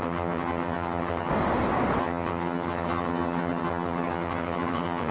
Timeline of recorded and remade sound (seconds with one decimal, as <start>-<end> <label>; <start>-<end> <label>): 0.0-1.3 remade; 1.3-2.0 recorded; 2.0-5.1 remade

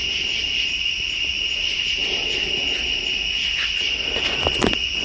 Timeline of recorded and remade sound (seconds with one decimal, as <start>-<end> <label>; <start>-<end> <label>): 0.0-5.0 recorded

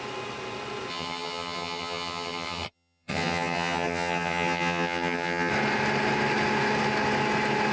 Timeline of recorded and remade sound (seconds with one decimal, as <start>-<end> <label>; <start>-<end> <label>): 0.0-0.9 recorded; 0.9-5.5 remade; 5.5-7.7 recorded

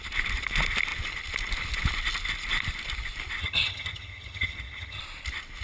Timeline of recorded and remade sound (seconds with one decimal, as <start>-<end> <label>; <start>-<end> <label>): 0.0-3.4 recorded; 3.4-5.0 remade; 5.0-5.6 recorded

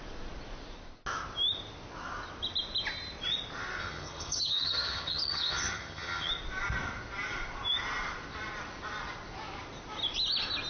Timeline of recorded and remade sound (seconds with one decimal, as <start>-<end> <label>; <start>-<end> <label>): 0.0-3.8 recorded; 3.8-6.3 remade; 6.3-10.7 recorded